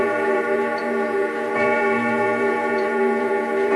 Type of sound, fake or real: fake